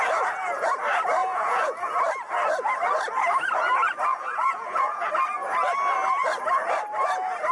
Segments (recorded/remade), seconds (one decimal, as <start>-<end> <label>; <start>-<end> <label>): 0.0-1.2 recorded; 1.2-2.0 remade; 2.0-4.1 recorded; 4.1-5.1 remade; 5.1-7.5 recorded